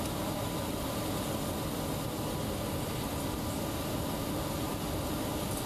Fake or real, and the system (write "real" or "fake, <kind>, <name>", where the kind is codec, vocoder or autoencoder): real